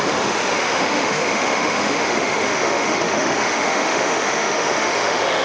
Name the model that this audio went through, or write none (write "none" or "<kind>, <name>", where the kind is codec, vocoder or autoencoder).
autoencoder, DAC-VAE